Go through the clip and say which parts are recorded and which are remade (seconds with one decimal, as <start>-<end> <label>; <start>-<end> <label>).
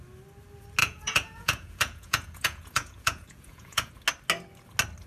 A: 0.0-0.8 recorded; 0.8-3.9 remade; 3.9-5.1 recorded